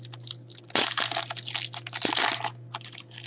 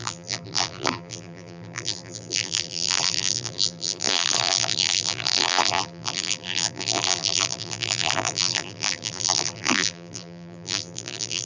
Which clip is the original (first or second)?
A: first